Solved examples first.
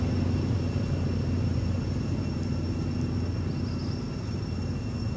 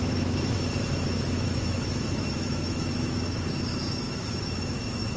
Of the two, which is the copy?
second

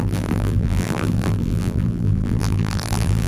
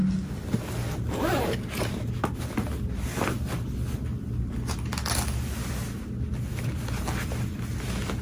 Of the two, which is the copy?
first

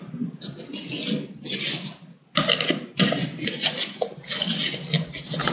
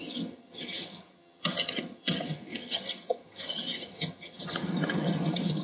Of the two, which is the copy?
second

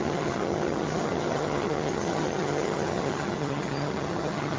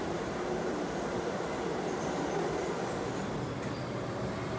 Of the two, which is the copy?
first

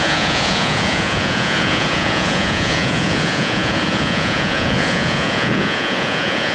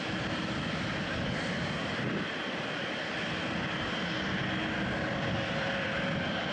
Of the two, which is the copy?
first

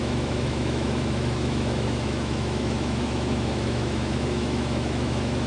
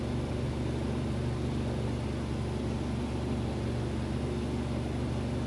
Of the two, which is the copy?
first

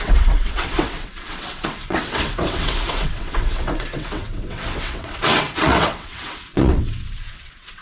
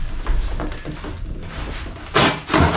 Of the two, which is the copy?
first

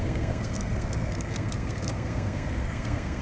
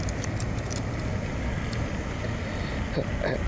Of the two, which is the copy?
first